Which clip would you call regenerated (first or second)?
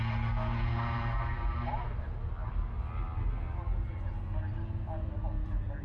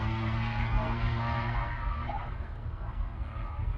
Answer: second